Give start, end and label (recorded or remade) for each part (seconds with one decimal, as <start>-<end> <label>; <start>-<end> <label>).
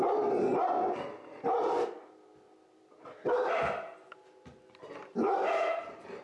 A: 0.0-6.2 recorded